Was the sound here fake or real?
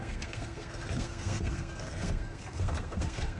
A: fake